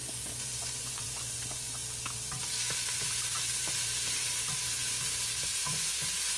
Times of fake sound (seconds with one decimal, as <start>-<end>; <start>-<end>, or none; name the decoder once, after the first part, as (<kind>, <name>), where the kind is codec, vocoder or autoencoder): 0.0-1.8 (vocoder, Vocos); 5.6-6.4

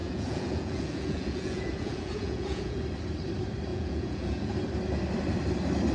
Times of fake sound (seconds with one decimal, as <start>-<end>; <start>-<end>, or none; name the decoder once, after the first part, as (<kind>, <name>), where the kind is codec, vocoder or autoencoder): 0.0-2.8 (vocoder, Vocos); 3.7-4.5

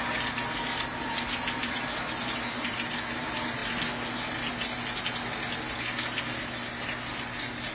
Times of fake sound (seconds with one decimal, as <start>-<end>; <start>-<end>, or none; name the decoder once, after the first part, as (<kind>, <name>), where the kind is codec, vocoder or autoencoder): none